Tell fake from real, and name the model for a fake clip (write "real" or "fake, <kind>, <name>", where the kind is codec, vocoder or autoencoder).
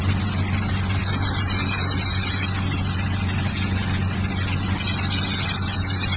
real